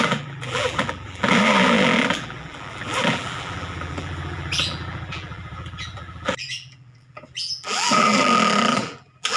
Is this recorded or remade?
remade